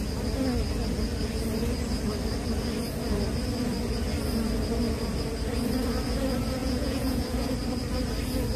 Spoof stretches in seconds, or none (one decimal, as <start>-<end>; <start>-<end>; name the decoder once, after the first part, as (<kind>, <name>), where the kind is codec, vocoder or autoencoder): 6.6-7.5 (vocoder, Vocos)